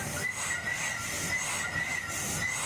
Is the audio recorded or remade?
recorded